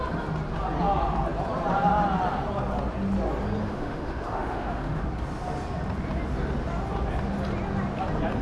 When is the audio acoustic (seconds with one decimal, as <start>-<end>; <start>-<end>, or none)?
0.0-3.6; 5.0-8.4